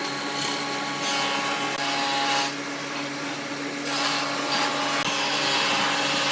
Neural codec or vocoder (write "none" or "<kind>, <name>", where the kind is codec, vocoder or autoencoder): none